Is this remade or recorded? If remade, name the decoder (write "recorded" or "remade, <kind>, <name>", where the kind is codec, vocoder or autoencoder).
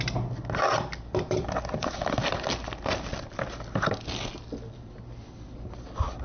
recorded